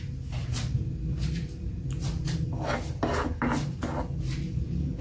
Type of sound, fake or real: real